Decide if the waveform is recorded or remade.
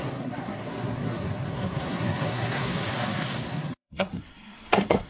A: remade